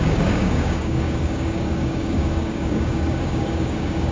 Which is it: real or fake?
fake